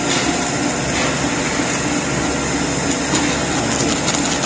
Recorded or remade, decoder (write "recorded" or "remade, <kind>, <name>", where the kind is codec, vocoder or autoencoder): recorded